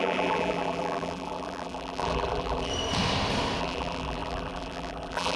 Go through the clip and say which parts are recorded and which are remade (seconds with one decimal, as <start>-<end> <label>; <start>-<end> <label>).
0.0-2.7 remade; 2.7-3.6 recorded; 3.6-5.4 remade